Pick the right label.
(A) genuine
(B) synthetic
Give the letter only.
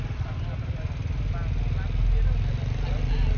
A